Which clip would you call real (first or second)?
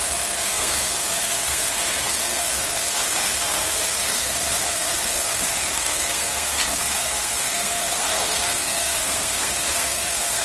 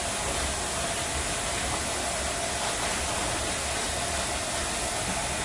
second